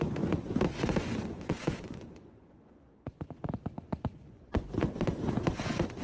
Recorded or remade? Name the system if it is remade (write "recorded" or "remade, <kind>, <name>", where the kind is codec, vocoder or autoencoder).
remade, vocoder, Vocos